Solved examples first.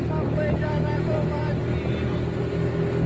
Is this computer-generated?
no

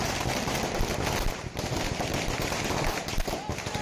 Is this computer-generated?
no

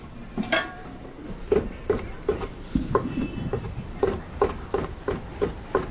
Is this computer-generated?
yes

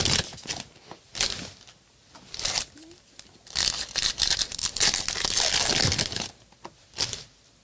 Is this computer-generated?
no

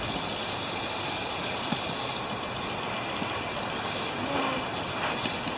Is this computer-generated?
no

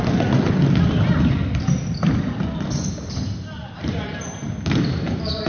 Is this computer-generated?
no